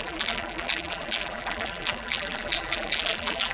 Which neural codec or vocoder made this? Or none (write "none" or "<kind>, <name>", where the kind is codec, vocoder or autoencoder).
vocoder, BigVGAN v2